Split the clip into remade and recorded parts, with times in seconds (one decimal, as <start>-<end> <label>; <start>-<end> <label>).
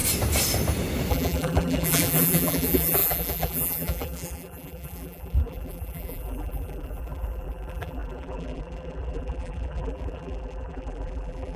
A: 0.0-1.1 recorded; 1.1-11.6 remade